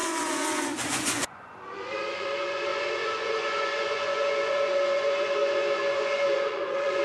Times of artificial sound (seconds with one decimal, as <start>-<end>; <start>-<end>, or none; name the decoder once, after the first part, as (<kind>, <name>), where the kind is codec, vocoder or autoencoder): 0.0-7.0 (vocoder, Vocos)